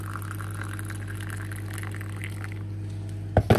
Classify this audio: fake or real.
real